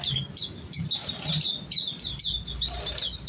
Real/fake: real